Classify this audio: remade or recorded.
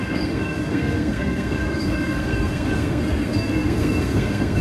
remade